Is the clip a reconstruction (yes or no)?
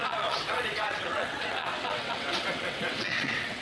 yes